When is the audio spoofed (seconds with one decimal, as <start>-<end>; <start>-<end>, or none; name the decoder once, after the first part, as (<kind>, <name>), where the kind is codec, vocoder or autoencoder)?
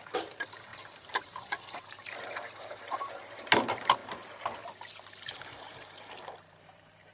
0.0-4.0 (vocoder, BigVGAN v2); 5.1-7.1